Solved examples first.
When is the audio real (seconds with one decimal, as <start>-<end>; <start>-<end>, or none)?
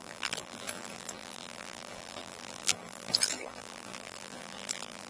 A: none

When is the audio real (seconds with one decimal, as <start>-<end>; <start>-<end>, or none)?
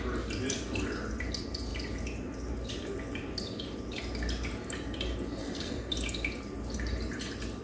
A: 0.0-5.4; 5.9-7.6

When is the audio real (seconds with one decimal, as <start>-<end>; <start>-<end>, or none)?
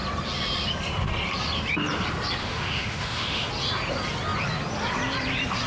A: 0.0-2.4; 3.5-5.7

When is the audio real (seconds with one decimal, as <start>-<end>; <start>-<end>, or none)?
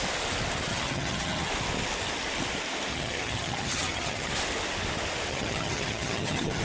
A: 0.0-0.7; 1.5-2.9; 4.3-5.3